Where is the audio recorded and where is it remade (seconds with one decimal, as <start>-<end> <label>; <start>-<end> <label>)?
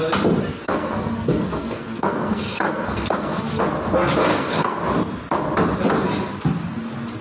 0.0-0.5 recorded; 0.5-3.6 remade; 3.6-4.3 recorded; 4.3-4.8 remade; 4.8-7.2 recorded